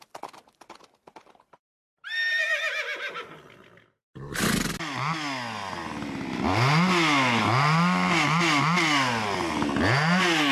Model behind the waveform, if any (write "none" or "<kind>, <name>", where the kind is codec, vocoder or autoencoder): none